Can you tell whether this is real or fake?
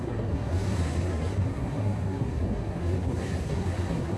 fake